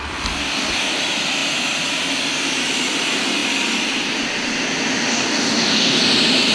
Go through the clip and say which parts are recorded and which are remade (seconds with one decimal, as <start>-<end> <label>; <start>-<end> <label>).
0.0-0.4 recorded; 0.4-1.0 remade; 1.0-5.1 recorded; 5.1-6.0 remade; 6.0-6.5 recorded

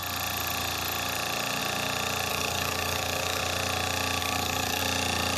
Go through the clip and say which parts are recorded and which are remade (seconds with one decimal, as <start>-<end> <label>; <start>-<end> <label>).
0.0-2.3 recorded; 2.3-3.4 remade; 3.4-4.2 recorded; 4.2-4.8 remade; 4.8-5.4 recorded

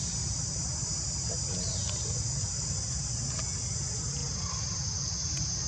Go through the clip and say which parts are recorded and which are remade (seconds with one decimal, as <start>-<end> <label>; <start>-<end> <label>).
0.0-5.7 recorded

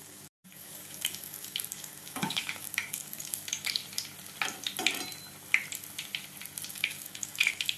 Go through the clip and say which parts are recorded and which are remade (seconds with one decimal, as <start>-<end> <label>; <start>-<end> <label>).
0.0-3.8 remade; 3.8-6.7 recorded; 6.7-7.8 remade

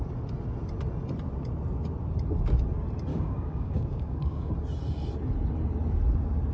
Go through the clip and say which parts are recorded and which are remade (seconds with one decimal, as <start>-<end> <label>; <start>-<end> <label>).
0.0-3.1 recorded; 3.1-4.5 remade; 4.5-6.5 recorded

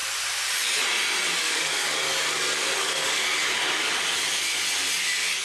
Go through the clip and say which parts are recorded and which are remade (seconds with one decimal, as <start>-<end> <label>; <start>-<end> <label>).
0.0-1.4 recorded; 1.4-3.9 remade; 3.9-5.4 recorded